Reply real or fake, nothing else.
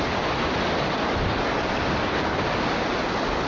real